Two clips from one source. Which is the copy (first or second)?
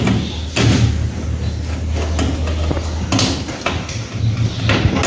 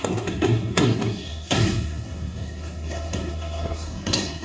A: second